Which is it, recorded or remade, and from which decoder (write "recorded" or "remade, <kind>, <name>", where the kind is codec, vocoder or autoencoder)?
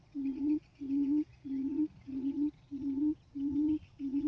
remade, vocoder, Vocos